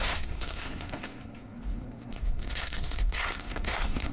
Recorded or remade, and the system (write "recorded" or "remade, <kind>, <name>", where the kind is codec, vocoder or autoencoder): remade, codec, SNAC